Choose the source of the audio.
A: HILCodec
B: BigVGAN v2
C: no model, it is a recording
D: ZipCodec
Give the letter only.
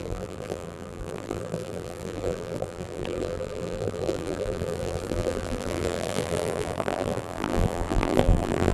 B